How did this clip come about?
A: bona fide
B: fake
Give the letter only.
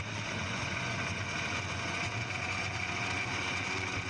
B